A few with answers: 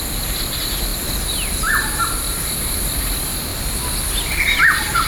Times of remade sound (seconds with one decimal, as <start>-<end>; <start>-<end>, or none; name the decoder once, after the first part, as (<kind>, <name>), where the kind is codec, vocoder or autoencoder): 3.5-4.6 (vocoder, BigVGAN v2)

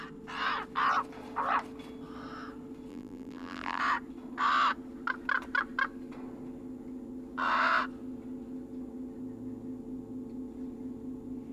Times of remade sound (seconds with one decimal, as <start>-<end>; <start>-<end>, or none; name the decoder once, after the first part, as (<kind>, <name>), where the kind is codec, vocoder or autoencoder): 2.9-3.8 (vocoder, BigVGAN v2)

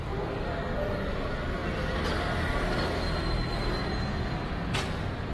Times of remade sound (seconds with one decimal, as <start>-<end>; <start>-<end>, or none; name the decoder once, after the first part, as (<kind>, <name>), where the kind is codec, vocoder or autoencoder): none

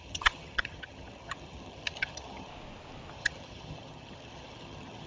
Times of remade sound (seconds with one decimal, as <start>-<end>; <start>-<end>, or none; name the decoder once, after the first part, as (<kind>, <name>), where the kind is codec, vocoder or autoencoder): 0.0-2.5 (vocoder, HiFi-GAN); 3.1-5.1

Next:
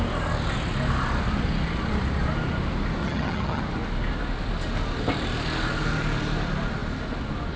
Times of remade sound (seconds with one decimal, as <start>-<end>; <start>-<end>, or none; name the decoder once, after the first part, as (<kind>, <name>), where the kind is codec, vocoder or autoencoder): 3.0-3.6 (vocoder, HiFi-GAN)

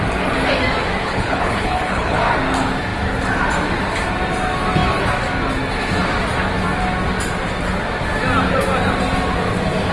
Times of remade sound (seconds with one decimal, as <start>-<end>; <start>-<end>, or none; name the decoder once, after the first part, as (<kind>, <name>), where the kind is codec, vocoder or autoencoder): 1.0-2.2 (codec, HILCodec)